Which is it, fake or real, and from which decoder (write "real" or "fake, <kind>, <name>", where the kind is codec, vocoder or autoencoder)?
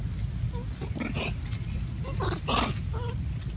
real